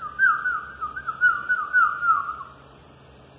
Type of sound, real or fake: real